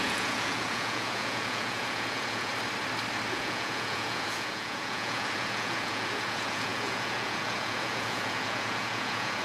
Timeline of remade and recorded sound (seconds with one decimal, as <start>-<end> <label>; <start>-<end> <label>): 0.0-2.5 remade; 2.5-3.3 recorded; 3.3-9.4 remade